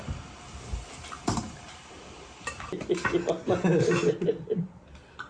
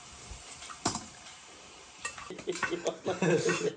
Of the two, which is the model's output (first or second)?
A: second